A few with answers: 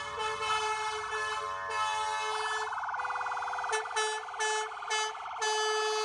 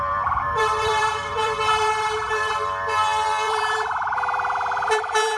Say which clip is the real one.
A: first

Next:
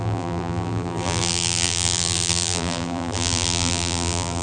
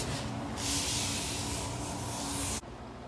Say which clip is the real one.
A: second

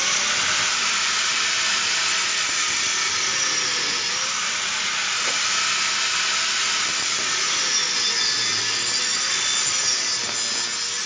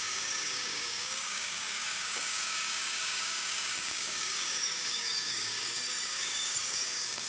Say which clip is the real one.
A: first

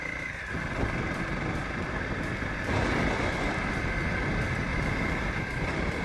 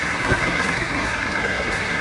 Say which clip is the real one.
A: first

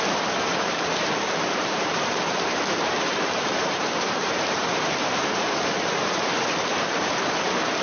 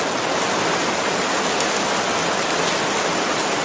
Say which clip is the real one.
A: second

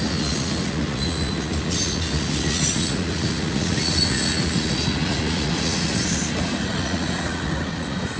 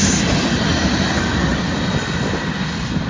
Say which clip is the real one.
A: second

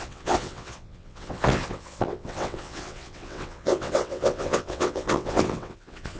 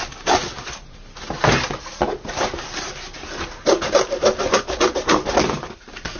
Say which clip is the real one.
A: second